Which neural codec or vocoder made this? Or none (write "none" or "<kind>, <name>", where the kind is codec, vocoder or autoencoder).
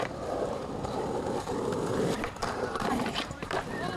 vocoder, BigVGAN v2